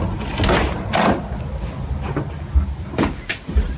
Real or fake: real